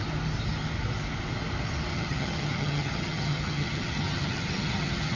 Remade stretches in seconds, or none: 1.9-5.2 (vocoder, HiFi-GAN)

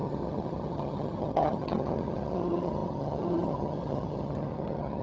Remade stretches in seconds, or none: 0.0-5.0 (vocoder, HiFi-GAN)

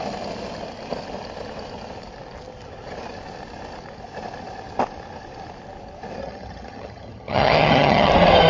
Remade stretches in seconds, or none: 6.2-8.1 (vocoder, HiFi-GAN)

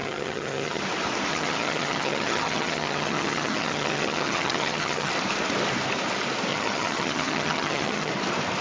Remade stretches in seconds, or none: 0.0-0.8 (vocoder, HiFi-GAN); 1.3-5.1; 6.5-8.1